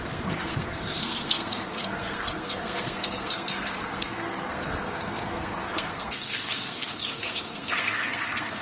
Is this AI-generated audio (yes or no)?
yes